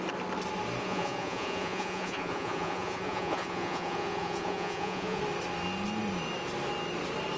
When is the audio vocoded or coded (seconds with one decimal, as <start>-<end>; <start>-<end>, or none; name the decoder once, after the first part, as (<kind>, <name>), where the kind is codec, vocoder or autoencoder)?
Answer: 0.8-5.2 (vocoder, Vocos)